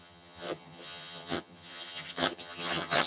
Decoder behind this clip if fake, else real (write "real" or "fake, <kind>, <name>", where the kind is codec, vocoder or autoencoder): fake, vocoder, HiFi-GAN